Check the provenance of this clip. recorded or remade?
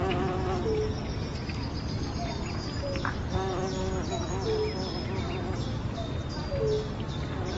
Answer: recorded